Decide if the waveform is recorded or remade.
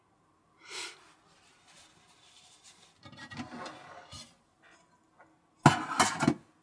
recorded